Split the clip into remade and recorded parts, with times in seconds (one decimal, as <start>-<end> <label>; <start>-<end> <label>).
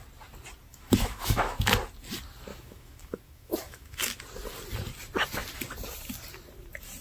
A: 0.0-0.7 recorded; 0.7-1.7 remade; 1.7-2.5 recorded; 2.5-4.0 remade; 4.0-7.0 recorded